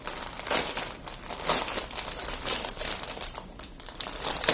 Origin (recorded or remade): recorded